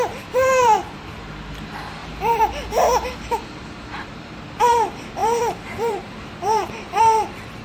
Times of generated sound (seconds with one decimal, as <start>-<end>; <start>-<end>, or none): 0.0-7.6